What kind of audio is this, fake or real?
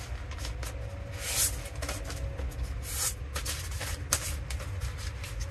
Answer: real